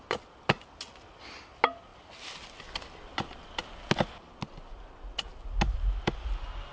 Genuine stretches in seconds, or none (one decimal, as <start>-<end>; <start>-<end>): 0.0-6.7